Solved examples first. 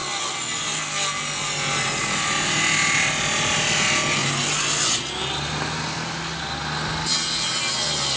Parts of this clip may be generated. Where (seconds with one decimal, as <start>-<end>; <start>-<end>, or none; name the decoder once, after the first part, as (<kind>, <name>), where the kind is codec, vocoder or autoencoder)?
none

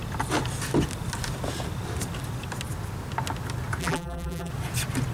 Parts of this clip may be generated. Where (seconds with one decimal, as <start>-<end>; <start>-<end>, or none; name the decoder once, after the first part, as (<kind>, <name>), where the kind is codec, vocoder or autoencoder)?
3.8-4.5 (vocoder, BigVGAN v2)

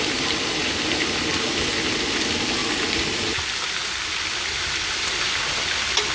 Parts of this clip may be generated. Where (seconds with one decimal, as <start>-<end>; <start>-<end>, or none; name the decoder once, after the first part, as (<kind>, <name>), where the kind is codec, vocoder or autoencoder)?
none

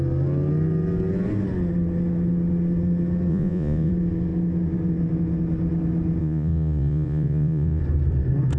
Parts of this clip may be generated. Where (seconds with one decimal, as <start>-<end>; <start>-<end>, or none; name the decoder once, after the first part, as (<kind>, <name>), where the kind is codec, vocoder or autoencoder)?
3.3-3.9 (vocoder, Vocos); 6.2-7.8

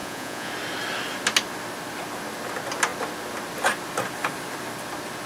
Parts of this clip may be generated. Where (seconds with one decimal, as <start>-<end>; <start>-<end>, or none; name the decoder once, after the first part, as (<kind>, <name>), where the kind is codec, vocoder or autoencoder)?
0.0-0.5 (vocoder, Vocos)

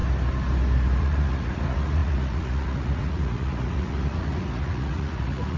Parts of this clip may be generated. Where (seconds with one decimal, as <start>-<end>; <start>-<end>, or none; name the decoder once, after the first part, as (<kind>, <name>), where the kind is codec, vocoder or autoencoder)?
1.0-5.6 (vocoder, Vocos)